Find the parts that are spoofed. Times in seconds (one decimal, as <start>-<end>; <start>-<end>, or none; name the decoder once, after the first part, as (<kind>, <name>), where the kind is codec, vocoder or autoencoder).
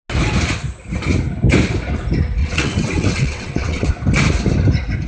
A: 2.4-3.9 (vocoder, WaveNeXt)